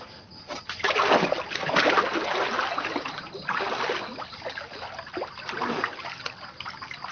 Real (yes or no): yes